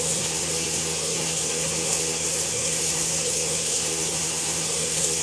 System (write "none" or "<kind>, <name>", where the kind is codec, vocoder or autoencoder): codec, SNAC